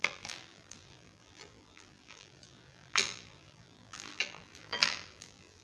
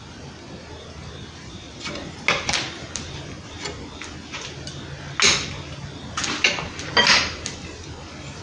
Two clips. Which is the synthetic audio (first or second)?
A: first